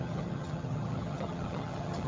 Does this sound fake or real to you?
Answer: fake